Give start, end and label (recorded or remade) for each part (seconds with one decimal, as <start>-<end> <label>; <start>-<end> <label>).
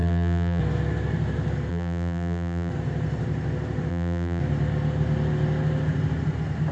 0.0-0.6 remade; 0.6-1.7 recorded; 1.7-2.7 remade; 2.7-3.9 recorded; 3.9-4.4 remade; 4.4-6.7 recorded